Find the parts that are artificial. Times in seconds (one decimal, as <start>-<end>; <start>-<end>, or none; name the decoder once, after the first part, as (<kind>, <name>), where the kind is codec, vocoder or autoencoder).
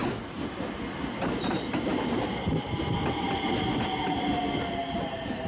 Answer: 1.5-1.9 (vocoder, BigVGAN v2); 4.9-5.5